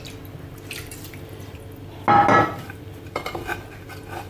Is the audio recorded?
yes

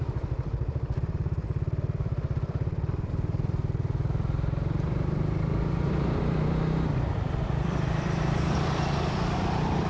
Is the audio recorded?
no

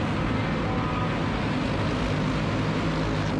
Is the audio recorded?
yes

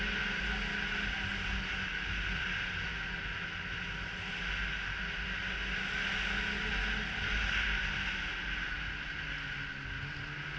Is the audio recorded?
yes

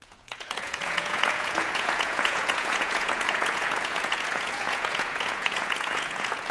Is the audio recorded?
no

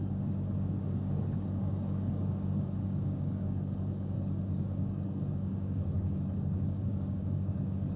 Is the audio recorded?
no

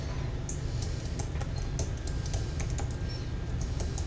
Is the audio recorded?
yes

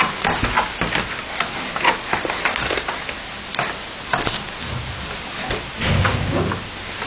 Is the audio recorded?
yes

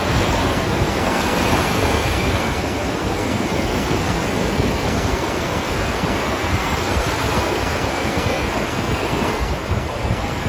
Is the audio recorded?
no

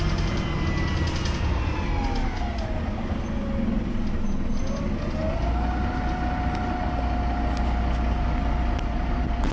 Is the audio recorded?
yes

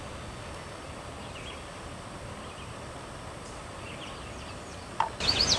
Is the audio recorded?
yes